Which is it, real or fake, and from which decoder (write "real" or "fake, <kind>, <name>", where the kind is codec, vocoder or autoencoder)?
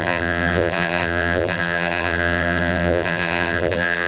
fake, vocoder, BigVGAN v2